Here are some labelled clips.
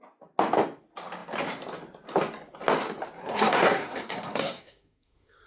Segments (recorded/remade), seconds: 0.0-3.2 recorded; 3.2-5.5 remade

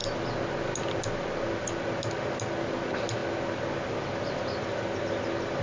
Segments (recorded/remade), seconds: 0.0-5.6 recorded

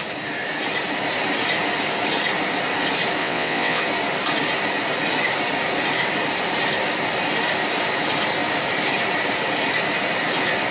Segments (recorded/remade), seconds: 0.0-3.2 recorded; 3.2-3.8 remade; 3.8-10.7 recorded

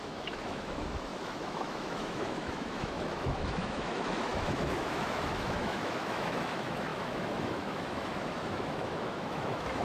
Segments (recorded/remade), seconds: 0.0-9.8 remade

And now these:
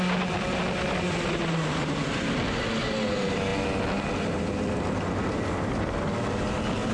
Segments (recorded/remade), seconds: 0.0-6.9 recorded

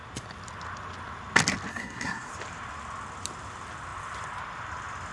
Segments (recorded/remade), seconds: 0.0-1.7 recorded; 1.7-2.3 remade; 2.3-5.1 recorded

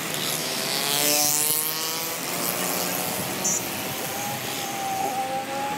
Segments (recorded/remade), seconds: 0.0-0.4 recorded; 0.4-1.3 remade; 1.3-5.8 recorded